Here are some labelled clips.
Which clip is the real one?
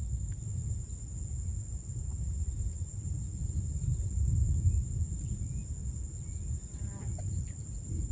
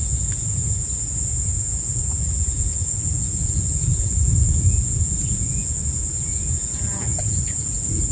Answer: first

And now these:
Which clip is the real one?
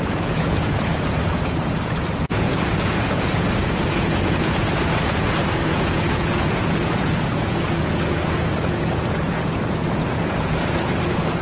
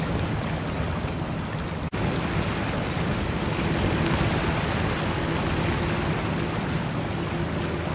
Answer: second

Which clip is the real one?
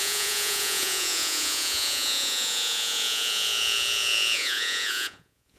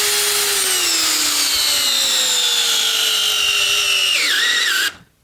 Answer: second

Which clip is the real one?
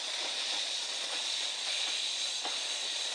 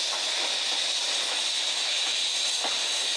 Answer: second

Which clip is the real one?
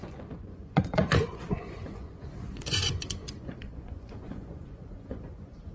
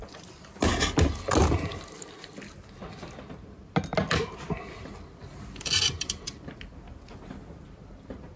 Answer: second